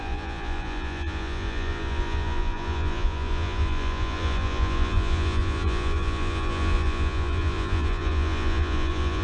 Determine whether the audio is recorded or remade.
remade